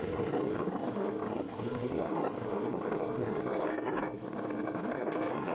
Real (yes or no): no